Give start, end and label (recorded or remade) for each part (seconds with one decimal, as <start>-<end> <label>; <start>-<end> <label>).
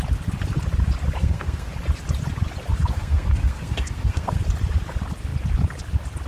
0.0-1.2 recorded; 1.2-1.7 remade; 1.7-2.9 recorded; 2.9-4.4 remade; 4.4-6.3 recorded